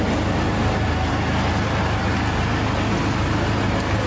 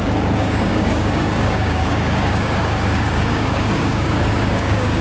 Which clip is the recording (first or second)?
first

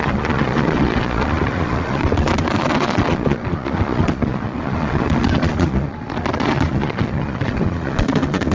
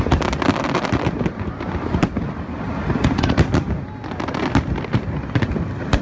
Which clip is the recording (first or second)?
second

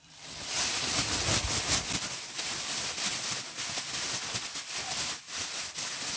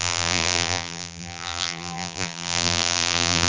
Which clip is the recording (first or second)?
first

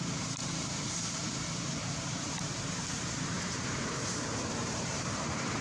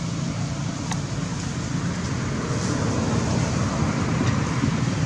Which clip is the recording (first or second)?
second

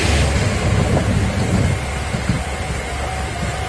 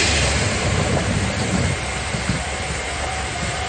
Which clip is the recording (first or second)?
first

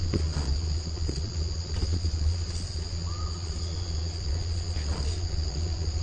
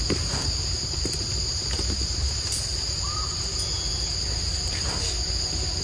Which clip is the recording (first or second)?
second